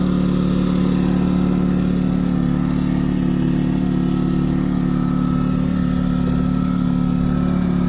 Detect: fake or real real